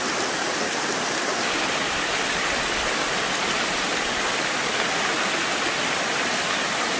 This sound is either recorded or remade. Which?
recorded